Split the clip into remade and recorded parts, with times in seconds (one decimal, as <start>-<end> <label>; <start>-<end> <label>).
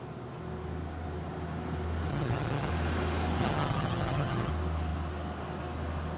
0.0-2.1 recorded; 2.1-2.7 remade; 2.7-3.4 recorded; 3.4-4.5 remade; 4.5-6.2 recorded